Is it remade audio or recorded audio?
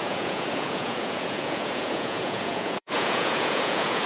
remade